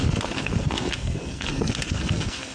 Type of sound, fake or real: fake